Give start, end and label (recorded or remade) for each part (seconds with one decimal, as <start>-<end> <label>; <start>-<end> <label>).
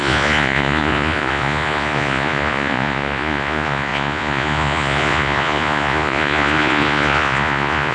0.0-7.9 remade